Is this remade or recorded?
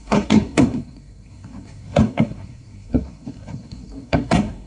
remade